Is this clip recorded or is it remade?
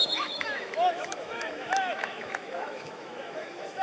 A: remade